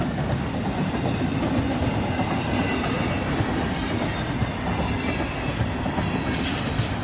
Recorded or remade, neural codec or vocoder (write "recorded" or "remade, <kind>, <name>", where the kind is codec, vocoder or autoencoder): recorded